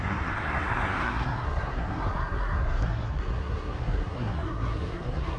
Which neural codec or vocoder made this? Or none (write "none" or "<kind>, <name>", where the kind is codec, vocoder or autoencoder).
codec, SNAC